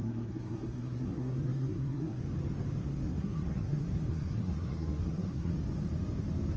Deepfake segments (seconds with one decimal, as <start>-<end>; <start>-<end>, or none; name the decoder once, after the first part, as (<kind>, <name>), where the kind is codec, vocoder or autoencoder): 0.0-2.2 (codec, SNAC); 2.8-5.5